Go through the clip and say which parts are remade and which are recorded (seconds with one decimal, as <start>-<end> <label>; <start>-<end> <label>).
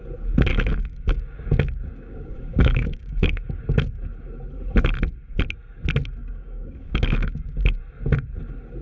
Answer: 0.0-0.5 recorded; 0.5-3.6 remade; 3.6-6.2 recorded; 6.2-7.8 remade; 7.8-8.8 recorded